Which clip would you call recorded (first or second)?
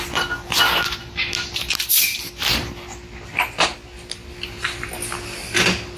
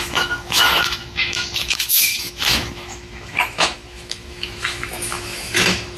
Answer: first